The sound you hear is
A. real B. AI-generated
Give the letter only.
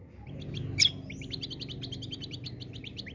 A